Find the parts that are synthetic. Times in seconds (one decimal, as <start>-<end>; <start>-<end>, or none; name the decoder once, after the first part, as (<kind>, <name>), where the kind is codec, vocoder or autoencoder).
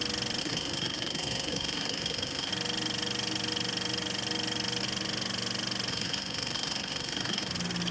0.4-2.5 (codec, SNAC); 5.9-7.5